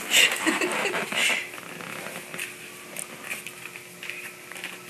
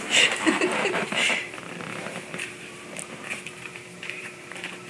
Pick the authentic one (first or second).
first